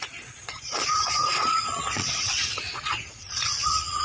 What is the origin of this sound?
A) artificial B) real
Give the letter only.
A